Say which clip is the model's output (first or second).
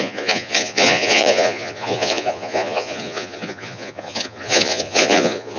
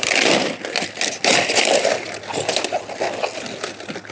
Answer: first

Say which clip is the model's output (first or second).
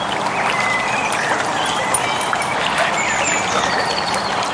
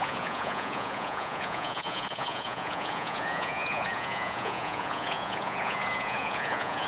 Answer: second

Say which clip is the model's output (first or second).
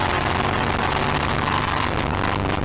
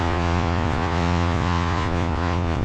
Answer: second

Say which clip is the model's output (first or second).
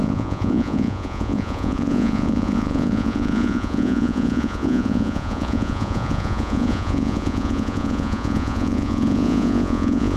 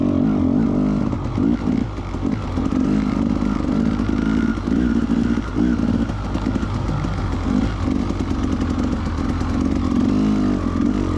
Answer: first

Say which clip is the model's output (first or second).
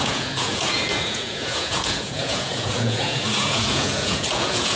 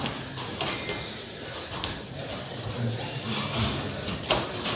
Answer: first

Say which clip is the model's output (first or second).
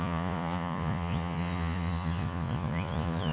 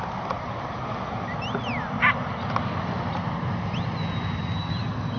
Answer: first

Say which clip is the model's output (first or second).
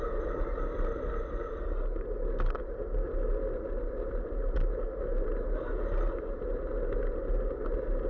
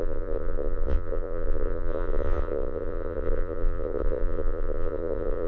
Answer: second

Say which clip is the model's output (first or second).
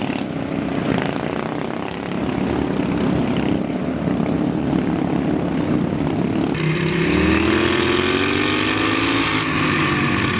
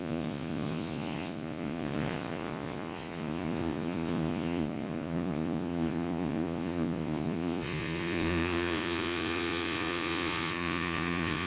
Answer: second